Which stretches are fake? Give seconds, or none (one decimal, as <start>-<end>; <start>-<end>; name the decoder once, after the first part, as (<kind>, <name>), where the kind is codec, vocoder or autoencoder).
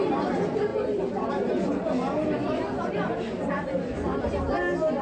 none